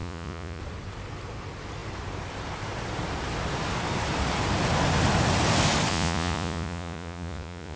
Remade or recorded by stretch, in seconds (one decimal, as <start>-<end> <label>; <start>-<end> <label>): 0.0-0.6 remade; 0.6-5.9 recorded; 5.9-7.8 remade